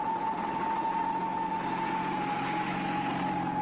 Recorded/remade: recorded